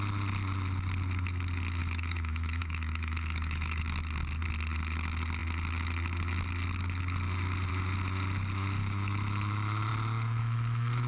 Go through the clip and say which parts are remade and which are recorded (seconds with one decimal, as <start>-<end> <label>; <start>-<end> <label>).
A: 0.0-1.8 recorded; 1.8-3.8 remade; 3.8-8.8 recorded; 8.8-9.9 remade; 9.9-10.4 recorded; 10.4-11.1 remade